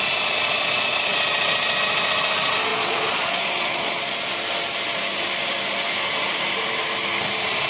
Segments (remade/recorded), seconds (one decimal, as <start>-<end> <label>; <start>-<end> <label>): 0.0-2.7 recorded; 2.7-4.1 remade; 4.1-7.7 recorded